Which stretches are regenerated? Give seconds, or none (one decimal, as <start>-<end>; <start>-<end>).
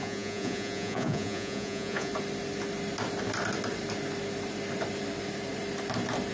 0.0-2.1